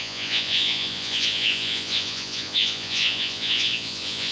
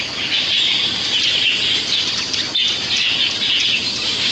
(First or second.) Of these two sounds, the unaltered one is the second